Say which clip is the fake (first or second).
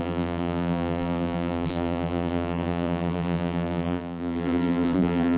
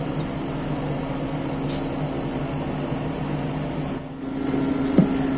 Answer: first